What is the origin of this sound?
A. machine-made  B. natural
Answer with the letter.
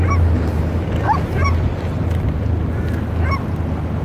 B